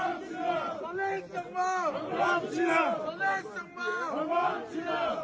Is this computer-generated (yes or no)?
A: no